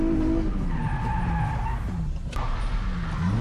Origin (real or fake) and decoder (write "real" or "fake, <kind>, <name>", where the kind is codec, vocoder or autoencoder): real